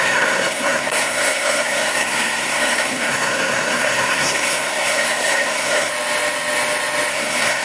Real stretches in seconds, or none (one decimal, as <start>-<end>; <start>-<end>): 5.9-7.1